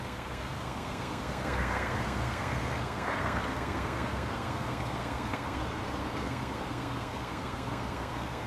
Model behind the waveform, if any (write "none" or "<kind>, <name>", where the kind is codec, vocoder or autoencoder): codec, SNAC